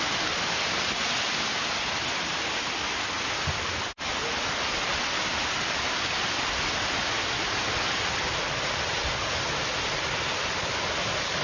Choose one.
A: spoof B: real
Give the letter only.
B